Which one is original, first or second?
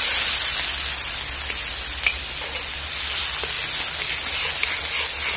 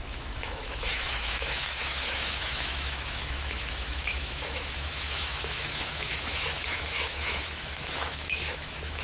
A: first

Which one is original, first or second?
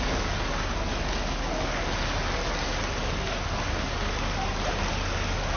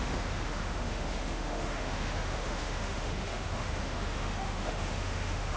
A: first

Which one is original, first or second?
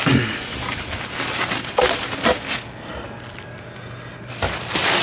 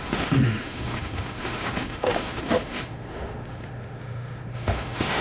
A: first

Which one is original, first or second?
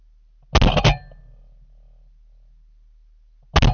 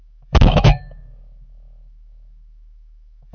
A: first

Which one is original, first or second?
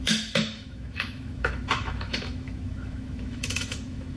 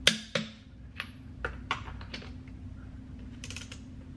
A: second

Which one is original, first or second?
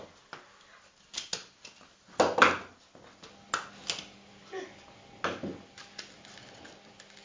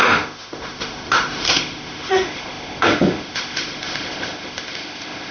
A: first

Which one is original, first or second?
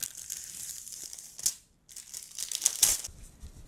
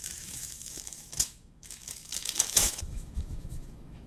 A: first